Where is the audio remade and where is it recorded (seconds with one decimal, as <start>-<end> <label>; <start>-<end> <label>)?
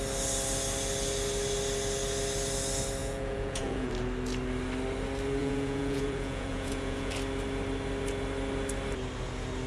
0.0-3.0 recorded; 3.0-3.9 remade; 3.9-5.4 recorded; 5.4-7.1 remade; 7.1-9.7 recorded